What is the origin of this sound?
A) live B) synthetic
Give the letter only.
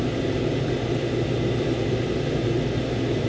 A